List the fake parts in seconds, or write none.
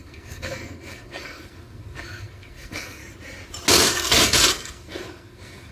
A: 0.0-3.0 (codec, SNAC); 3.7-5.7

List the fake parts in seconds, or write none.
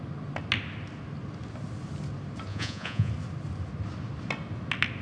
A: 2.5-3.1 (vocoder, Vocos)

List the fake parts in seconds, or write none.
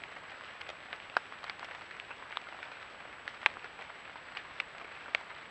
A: 0.0-0.7 (vocoder, BigVGAN v2); 4.0-5.5